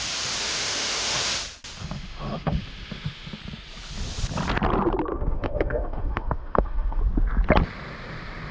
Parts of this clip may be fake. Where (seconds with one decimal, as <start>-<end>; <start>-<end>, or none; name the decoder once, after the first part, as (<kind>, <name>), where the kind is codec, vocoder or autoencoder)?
0.4-1.3 (autoencoder, DAC-VAE); 1.8-3.4; 5.1-7.0

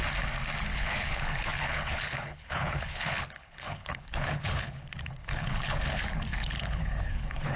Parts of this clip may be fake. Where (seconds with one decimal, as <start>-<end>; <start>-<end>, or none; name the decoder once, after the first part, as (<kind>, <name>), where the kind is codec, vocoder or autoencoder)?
0.7-7.6 (codec, HILCodec)